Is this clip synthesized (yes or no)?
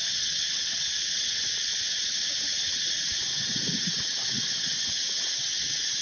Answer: yes